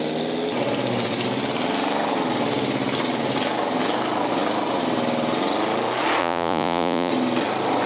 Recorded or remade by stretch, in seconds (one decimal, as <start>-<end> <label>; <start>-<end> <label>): 0.0-6.2 recorded; 6.2-7.1 remade; 7.1-7.9 recorded